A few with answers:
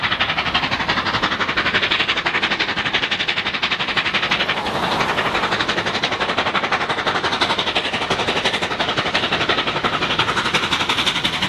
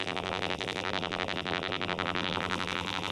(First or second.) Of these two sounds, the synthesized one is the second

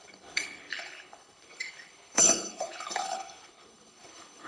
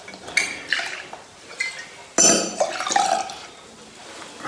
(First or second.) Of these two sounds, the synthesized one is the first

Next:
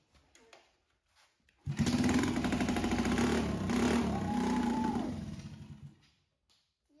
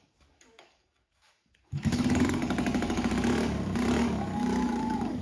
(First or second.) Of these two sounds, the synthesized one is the second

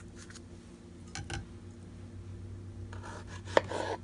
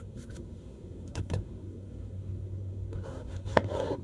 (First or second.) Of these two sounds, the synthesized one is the second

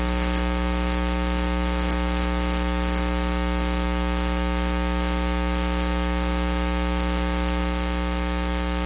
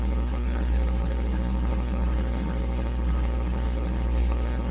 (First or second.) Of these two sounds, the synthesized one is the second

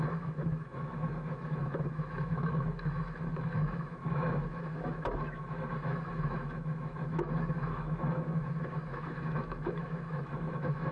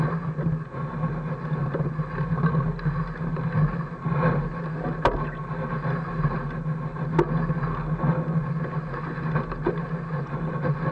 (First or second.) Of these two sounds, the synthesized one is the first